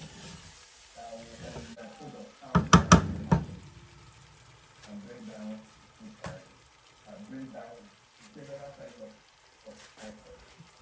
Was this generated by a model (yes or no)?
no